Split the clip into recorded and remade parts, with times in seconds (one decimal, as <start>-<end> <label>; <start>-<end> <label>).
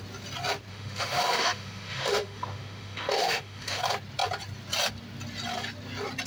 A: 0.0-0.7 recorded; 0.7-3.8 remade; 3.8-6.3 recorded